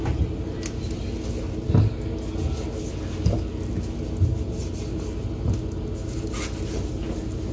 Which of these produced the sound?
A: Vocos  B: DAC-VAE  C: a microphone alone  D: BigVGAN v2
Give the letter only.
C